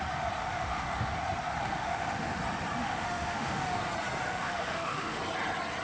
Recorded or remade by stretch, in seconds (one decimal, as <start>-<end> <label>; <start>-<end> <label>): 0.0-0.4 recorded; 0.4-1.2 remade; 1.2-1.6 recorded; 1.6-2.4 remade; 2.4-2.8 recorded; 2.8-3.8 remade; 3.8-4.3 recorded; 4.3-5.2 remade; 5.2-5.8 recorded